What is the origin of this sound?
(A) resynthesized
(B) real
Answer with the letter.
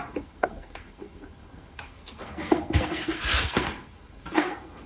A